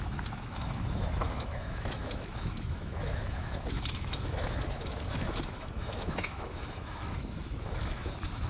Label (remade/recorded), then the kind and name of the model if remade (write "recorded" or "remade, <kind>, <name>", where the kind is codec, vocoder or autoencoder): remade, autoencoder, DAC-VAE